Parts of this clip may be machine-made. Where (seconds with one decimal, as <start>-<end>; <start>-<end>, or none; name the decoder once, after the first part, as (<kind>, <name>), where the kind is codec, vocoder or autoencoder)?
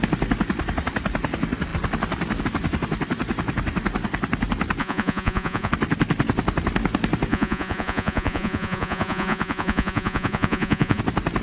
4.8-5.7 (vocoder, Vocos); 7.3-11.0